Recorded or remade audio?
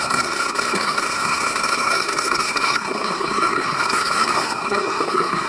remade